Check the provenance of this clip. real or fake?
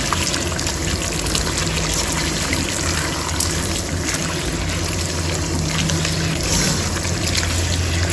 real